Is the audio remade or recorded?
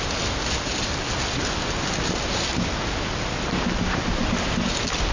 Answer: recorded